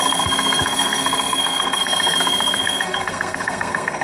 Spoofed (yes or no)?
yes